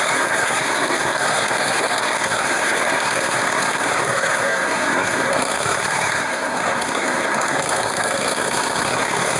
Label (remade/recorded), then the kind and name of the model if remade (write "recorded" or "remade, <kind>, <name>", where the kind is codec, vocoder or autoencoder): remade, codec, SNAC